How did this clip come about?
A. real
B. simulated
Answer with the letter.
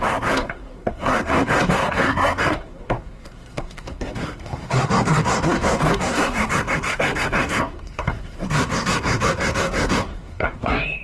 B